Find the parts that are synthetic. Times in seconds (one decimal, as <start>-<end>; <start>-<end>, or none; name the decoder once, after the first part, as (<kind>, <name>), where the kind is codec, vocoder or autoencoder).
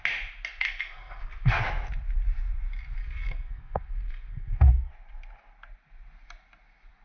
0.5-1.6 (codec, SNAC); 3.0-4.9